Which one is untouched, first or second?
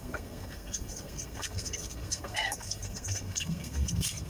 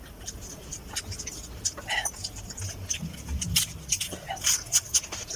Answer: second